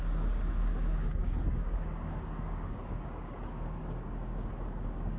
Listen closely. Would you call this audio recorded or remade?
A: remade